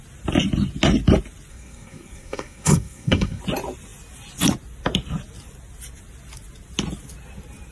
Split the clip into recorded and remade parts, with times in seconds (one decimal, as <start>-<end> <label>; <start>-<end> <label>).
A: 0.0-1.5 recorded; 1.5-3.4 remade; 3.4-7.7 recorded